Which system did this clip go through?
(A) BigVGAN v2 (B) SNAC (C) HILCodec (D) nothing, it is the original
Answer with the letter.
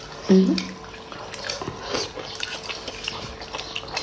D